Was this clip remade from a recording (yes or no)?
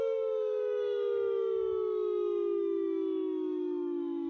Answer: yes